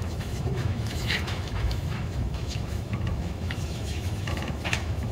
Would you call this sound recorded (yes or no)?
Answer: no